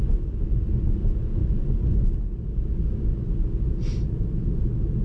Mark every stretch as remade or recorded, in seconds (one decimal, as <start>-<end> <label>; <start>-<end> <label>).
0.0-5.0 recorded